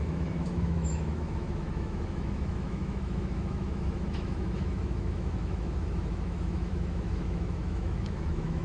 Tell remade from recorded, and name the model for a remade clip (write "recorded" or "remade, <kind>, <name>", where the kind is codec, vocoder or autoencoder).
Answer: remade, autoencoder, DAC-VAE